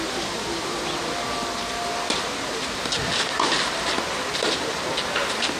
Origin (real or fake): real